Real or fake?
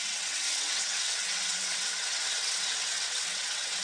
fake